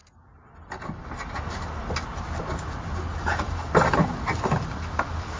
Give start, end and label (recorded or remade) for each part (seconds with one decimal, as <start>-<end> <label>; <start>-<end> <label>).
0.0-5.4 recorded